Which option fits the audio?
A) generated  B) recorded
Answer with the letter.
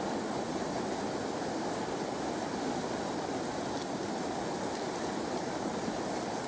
B